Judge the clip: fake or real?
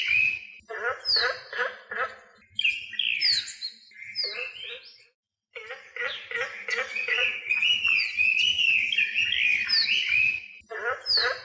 real